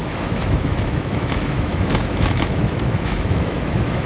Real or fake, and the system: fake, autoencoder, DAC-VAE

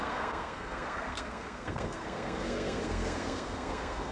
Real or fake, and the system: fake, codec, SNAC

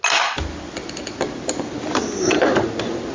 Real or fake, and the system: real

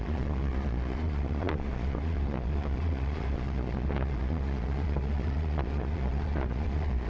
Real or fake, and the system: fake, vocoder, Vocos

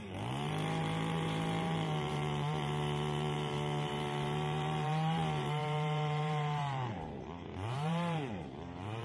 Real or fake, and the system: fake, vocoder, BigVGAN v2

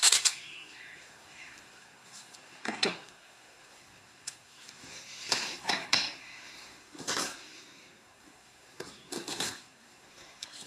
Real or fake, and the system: fake, codec, SNAC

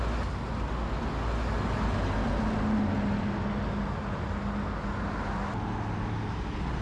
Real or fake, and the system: real